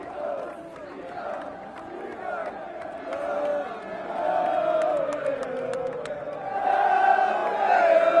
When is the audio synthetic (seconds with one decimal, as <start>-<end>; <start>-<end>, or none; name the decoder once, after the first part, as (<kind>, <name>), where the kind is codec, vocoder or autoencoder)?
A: none